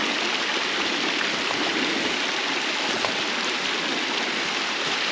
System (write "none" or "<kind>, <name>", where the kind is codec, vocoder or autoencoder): none